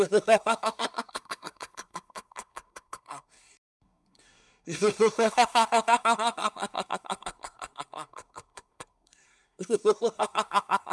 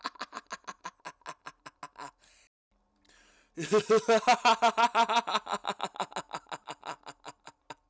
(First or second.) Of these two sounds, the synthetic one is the first